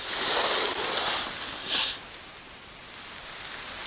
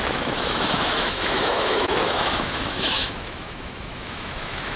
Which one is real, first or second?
first